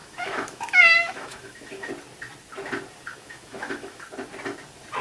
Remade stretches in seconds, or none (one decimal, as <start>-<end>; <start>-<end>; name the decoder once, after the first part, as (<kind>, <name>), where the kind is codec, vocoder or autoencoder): 0.0-1.9 (autoencoder, DAC-VAE); 3.1-4.0